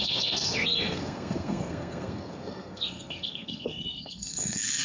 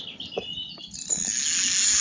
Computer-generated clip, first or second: first